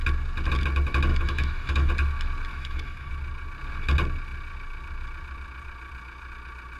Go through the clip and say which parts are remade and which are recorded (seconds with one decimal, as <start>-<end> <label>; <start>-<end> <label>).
0.0-1.1 recorded; 1.1-1.9 remade; 1.9-2.5 recorded; 2.5-3.1 remade; 3.1-6.8 recorded